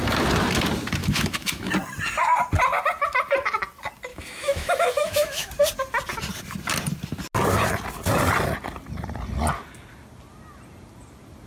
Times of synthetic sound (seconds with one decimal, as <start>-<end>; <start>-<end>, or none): 1.0-1.7; 4.1-5.5